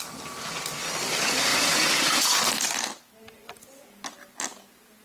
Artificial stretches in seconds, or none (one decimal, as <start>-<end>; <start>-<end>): 1.5-2.4